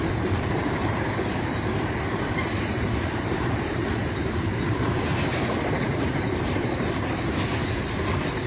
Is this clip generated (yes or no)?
yes